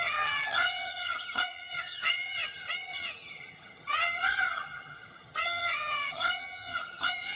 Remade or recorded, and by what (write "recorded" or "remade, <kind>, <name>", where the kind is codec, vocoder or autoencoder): remade, vocoder, HiFi-GAN